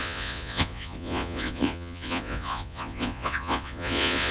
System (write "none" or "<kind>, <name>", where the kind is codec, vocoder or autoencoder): vocoder, Vocos